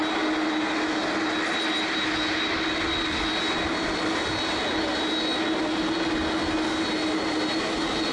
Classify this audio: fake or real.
real